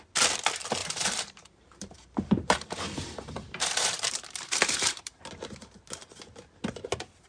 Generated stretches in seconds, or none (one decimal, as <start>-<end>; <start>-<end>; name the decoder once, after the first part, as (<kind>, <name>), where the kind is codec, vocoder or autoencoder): 0.8-5.2 (vocoder, BigVGAN v2)